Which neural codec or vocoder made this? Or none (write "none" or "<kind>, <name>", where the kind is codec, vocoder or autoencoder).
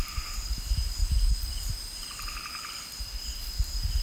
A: vocoder, BigVGAN v2